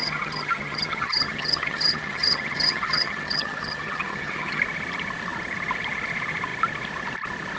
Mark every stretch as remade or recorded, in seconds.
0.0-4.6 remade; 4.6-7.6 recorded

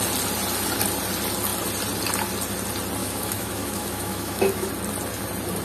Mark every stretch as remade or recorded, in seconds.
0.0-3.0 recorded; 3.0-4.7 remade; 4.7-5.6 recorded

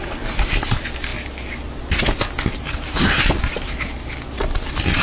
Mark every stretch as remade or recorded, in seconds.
0.0-5.0 recorded

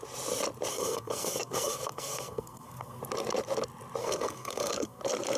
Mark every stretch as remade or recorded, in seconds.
0.0-0.7 recorded; 0.7-3.0 remade; 3.0-4.0 recorded; 4.0-5.0 remade; 5.0-5.4 recorded

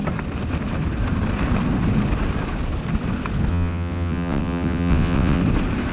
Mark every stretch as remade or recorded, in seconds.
0.0-3.5 recorded; 3.5-5.4 remade; 5.4-5.9 recorded

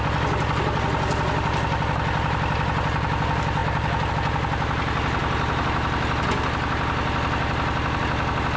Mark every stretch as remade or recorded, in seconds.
0.0-8.6 recorded

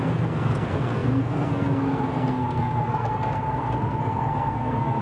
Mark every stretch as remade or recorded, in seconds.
0.0-5.0 remade

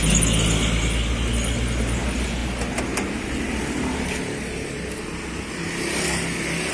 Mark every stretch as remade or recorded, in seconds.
0.0-6.7 recorded